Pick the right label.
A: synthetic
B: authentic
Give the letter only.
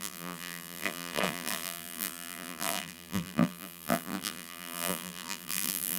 A